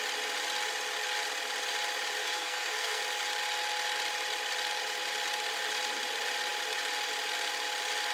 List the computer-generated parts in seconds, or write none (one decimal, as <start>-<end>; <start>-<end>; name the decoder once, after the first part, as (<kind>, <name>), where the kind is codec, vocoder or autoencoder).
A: 2.2-3.0 (codec, SNAC)